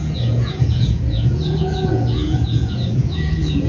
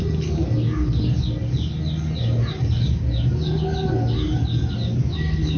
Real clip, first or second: second